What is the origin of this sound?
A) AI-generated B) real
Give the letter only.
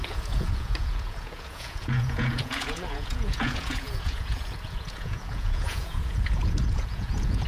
A